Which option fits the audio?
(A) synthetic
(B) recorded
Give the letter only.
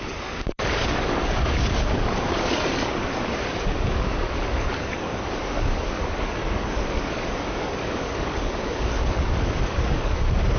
A